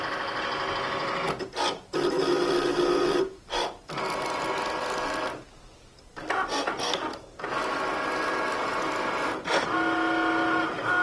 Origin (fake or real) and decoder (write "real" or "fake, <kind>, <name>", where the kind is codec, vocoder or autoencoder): real